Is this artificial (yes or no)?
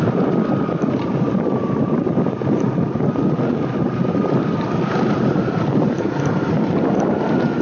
no